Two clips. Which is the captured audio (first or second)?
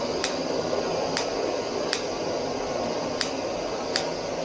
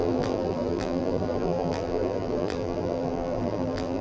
first